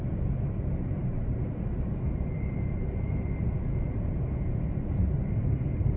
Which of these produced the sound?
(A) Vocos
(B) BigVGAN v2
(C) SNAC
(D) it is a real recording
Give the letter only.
D